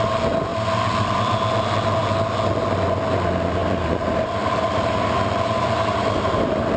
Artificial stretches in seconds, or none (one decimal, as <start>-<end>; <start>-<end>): 0.5-1.5; 3.6-6.8